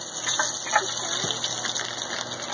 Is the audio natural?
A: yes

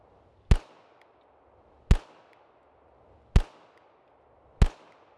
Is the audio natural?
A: yes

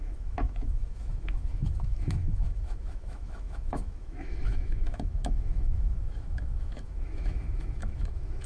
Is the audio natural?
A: no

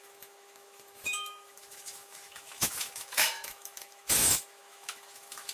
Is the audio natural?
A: no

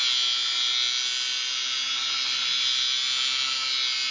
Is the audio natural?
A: yes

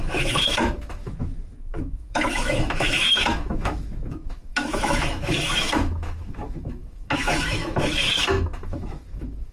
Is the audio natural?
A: no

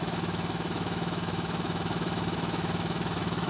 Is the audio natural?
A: no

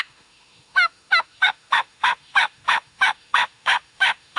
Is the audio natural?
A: no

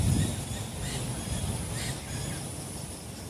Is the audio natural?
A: yes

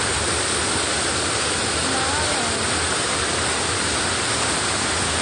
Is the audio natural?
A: yes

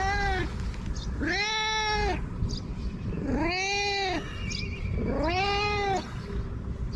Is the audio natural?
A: yes